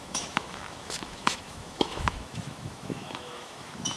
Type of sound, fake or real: fake